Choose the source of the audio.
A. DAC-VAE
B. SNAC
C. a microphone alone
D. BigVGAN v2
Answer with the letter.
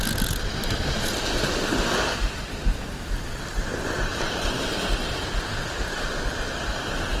C